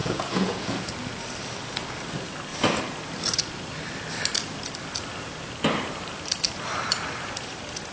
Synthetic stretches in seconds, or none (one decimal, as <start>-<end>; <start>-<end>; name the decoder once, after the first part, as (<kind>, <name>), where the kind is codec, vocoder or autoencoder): 0.0-0.9 (vocoder, Vocos)